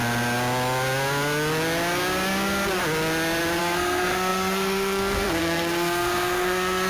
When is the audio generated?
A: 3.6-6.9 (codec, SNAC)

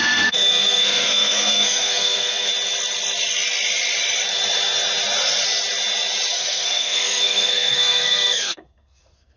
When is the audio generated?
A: 0.0-2.5 (codec, SNAC); 6.3-9.4

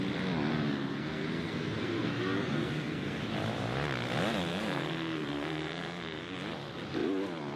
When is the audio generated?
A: 0.5-3.2 (codec, SNAC); 4.5-6.2

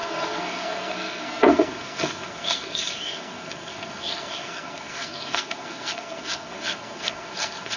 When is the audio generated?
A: 0.0-7.8 (codec, SNAC)